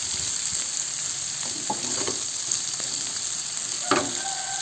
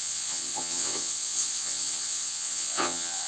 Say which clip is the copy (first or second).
second